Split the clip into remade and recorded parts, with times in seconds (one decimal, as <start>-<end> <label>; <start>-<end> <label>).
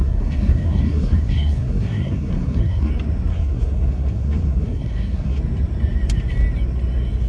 0.0-2.9 remade; 2.9-3.3 recorded; 3.3-5.4 remade; 5.4-7.3 recorded